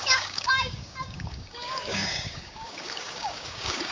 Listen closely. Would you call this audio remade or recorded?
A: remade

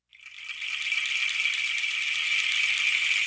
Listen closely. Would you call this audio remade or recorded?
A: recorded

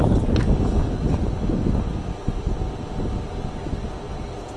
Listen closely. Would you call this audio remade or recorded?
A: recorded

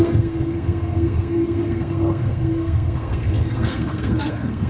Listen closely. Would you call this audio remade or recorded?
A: remade